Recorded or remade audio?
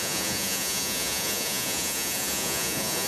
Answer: remade